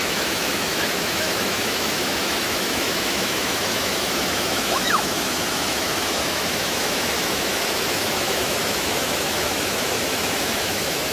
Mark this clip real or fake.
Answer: fake